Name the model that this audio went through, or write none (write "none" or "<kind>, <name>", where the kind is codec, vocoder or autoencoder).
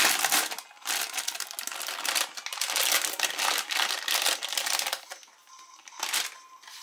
none